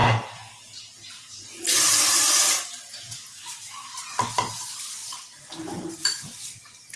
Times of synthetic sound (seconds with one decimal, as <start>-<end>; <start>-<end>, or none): 3.3-3.9